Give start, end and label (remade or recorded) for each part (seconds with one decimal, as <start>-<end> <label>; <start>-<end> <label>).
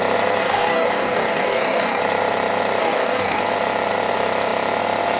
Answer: 0.0-0.4 recorded; 0.4-2.0 remade; 2.0-2.8 recorded; 2.8-3.4 remade; 3.4-5.2 recorded